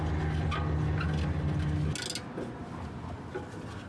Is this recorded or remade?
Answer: recorded